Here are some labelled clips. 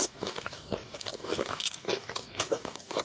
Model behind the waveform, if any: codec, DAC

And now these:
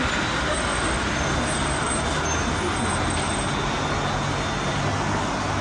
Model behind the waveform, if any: none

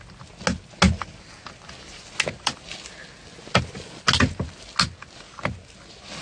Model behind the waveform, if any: none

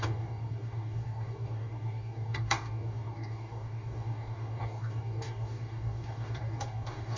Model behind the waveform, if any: codec, DAC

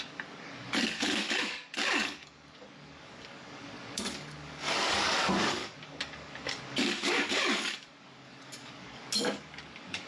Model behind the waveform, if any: codec, DAC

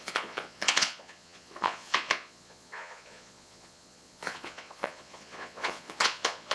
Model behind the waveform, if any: vocoder, Vocos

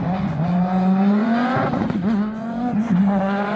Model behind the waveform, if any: vocoder, Vocos